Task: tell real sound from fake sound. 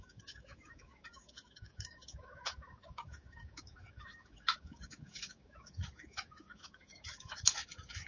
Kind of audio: fake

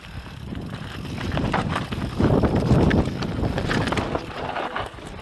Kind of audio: real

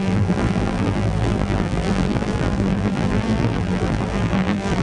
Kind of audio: fake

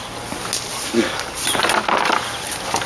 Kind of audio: real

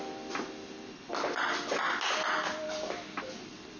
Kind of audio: real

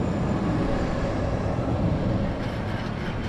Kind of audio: real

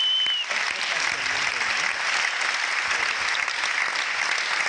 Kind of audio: real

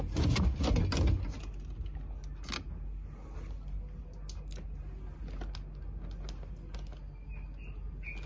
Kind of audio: real